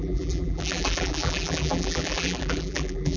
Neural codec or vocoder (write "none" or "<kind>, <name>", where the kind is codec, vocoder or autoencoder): vocoder, BigVGAN v2